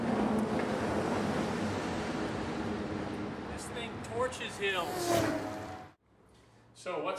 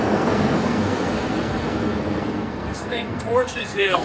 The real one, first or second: first